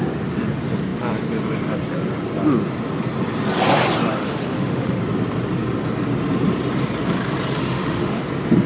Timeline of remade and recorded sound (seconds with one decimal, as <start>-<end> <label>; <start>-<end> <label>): 0.0-4.2 recorded; 4.2-5.0 remade; 5.0-7.6 recorded; 7.6-8.2 remade; 8.2-8.7 recorded